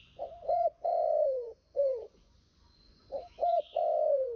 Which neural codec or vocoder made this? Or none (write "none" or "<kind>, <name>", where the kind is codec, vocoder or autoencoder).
vocoder, Vocos